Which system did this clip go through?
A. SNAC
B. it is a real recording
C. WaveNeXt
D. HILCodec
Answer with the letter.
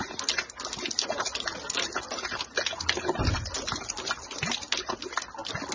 B